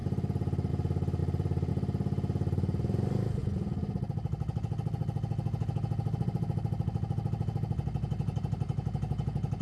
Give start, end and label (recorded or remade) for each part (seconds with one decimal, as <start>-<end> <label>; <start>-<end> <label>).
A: 0.0-0.7 remade; 0.7-1.2 recorded; 1.2-1.7 remade; 1.7-9.6 recorded

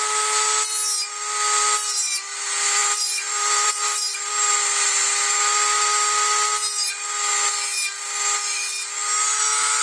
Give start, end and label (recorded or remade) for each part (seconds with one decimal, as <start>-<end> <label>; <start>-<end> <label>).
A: 0.0-2.8 recorded; 2.8-4.3 remade; 4.3-9.8 recorded

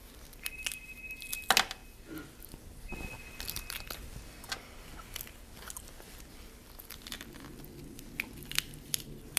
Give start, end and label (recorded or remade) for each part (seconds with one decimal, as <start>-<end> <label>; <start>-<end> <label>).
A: 0.0-9.4 recorded

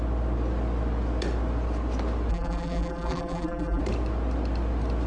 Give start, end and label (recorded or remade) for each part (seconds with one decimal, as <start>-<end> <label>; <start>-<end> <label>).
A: 0.0-2.3 recorded; 2.3-3.8 remade; 3.8-5.1 recorded

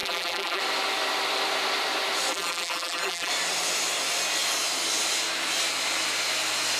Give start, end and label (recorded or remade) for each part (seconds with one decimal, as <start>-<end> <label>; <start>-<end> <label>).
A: 0.0-0.6 remade; 0.6-2.3 recorded; 2.3-3.3 remade; 3.3-6.8 recorded

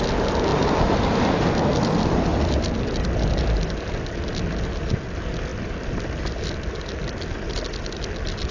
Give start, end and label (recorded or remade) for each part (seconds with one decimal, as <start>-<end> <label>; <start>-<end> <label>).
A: 0.0-0.5 recorded; 0.5-1.7 remade; 1.7-2.3 recorded; 2.3-3.9 remade; 3.9-5.5 recorded; 5.5-6.5 remade; 6.5-8.5 recorded

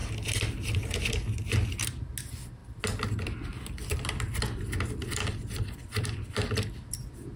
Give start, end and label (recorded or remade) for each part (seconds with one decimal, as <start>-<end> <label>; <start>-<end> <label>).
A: 0.0-0.8 remade; 0.8-2.6 recorded; 2.6-6.9 remade; 6.9-7.4 recorded